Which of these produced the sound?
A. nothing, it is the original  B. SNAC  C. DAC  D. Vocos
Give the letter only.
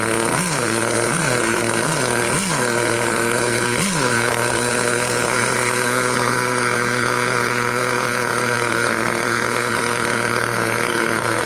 B